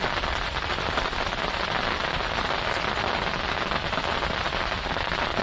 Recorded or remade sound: recorded